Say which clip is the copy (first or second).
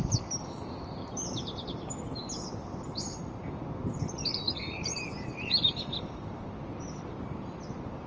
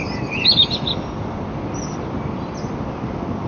first